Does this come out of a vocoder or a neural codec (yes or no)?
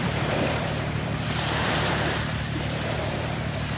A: yes